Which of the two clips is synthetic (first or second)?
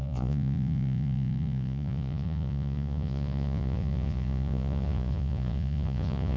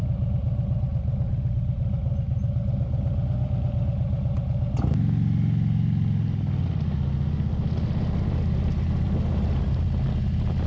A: first